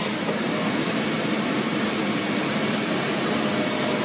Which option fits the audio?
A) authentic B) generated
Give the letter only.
A